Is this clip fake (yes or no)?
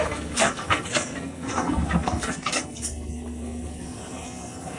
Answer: yes